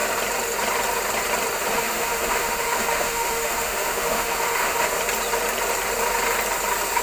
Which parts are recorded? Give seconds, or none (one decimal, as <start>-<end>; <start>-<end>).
0.0-1.7; 5.0-7.0